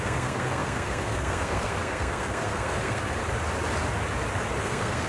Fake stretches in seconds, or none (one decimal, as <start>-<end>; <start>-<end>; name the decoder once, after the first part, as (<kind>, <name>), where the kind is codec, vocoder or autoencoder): 0.0-3.2 (codec, SNAC); 4.6-5.1